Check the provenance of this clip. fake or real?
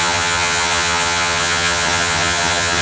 fake